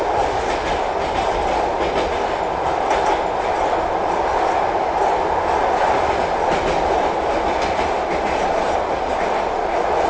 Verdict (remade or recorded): recorded